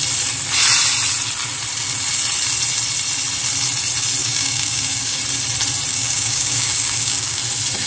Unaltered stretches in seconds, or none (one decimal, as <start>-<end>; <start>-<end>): 0.0-4.2; 5.2-5.9; 7.4-7.9